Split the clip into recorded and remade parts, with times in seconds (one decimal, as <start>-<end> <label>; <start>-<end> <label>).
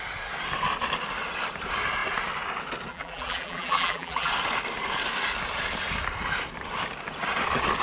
0.0-2.9 recorded; 2.9-4.3 remade; 4.3-7.8 recorded